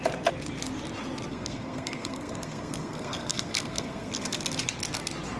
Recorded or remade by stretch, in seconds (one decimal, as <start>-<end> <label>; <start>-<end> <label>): 0.0-1.3 recorded; 1.3-4.5 remade; 4.5-5.4 recorded